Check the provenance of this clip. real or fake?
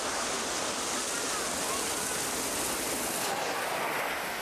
real